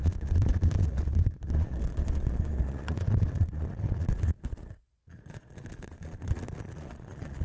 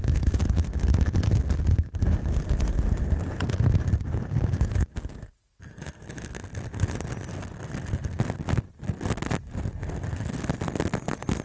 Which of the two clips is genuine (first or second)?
second